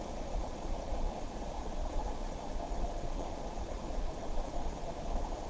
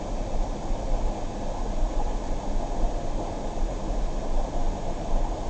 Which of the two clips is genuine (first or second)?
second